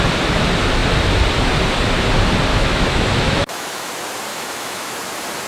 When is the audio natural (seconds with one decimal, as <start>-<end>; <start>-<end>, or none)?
0.0-2.5; 3.9-4.3; 4.9-5.5